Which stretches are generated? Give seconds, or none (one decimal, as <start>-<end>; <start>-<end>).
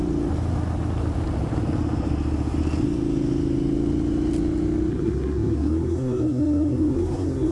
4.9-7.5